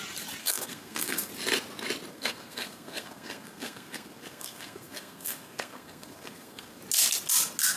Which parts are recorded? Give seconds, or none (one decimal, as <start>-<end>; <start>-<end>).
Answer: 0.0-0.4; 1.3-2.1; 6.8-7.8